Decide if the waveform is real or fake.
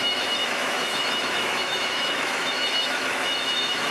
fake